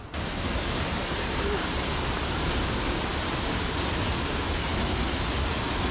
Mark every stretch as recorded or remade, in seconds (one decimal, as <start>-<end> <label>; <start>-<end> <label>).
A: 0.0-5.9 recorded